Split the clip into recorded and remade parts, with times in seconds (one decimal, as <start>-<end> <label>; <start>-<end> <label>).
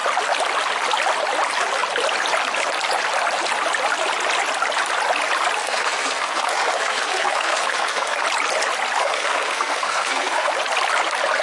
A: 0.0-5.6 recorded; 5.6-8.2 remade; 8.2-9.0 recorded; 9.0-10.5 remade; 10.5-11.4 recorded